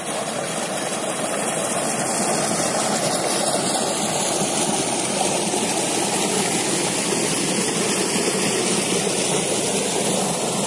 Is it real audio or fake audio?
real